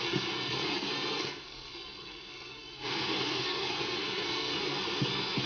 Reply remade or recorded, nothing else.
remade